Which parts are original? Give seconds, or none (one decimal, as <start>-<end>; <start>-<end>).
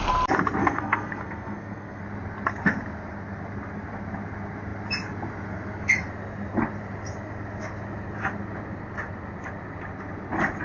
0.0-0.6; 2.0-10.6